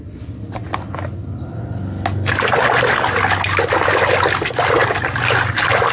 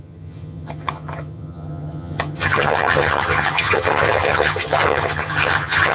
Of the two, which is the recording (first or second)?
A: first